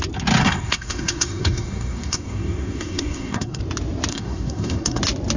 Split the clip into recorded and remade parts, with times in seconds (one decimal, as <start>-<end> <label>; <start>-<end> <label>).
0.0-0.4 recorded; 0.4-3.6 remade; 3.6-4.1 recorded; 4.1-5.0 remade; 5.0-5.4 recorded